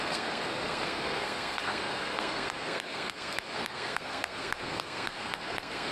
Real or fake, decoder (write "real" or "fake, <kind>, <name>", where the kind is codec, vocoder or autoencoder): fake, codec, SNAC